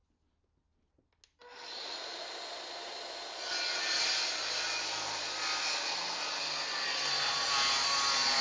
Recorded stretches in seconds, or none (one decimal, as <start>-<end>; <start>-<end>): 0.0-8.4